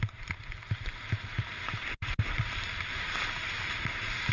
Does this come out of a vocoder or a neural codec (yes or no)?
yes